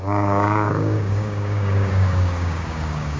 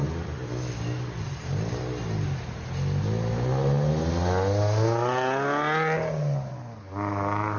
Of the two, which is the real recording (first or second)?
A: second